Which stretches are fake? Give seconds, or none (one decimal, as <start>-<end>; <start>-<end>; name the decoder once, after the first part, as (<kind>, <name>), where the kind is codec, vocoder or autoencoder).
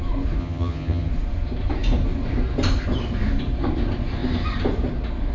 0.4-1.1 (vocoder, HiFi-GAN)